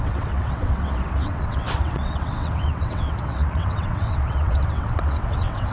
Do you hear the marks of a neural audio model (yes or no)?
yes